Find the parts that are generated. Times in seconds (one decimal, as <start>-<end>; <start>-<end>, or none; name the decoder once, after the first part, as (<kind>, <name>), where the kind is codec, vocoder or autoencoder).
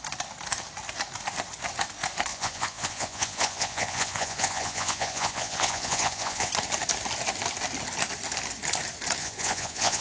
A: 2.3-6.5 (vocoder, Vocos); 9.2-10.0